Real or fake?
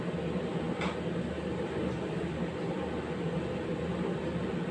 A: real